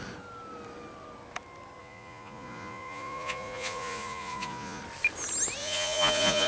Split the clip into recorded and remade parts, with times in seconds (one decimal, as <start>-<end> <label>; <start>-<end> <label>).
0.0-1.8 recorded; 1.8-4.8 remade; 4.8-5.6 recorded; 5.6-6.5 remade